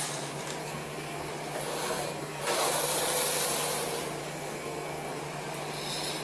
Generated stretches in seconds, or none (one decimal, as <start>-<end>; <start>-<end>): 0.6-1.3; 1.8-2.4; 4.2-5.2

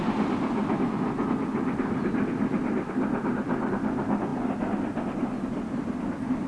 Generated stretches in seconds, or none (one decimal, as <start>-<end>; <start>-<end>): none

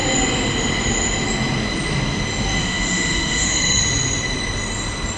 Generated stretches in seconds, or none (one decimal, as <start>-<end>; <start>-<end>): 2.6-3.8

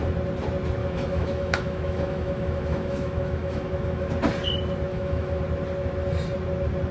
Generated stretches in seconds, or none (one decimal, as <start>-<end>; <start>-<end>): 0.8-4.1; 4.9-5.4

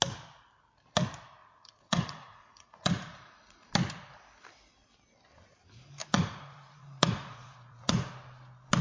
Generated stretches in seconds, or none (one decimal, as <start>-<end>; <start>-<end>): 1.4-3.7; 6.0-8.1

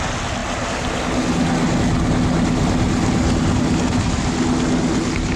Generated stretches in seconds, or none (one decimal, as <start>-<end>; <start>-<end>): none

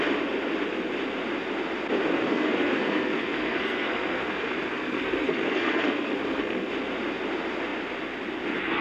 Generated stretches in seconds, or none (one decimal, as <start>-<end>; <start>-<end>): 2.2-6.7

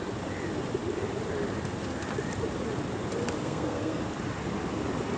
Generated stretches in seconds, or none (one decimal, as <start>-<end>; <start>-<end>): 3.4-4.0